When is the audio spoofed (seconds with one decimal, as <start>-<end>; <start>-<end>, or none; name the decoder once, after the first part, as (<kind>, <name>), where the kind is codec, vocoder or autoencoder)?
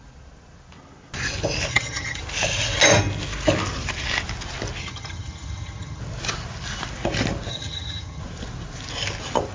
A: 1.7-2.2 (vocoder, HiFi-GAN); 4.8-6.0; 7.5-8.2